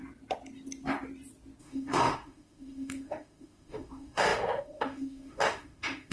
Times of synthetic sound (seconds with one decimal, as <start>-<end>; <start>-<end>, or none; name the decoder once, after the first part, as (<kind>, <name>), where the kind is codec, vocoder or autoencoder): 1.6-6.1 (autoencoder, DAC-VAE)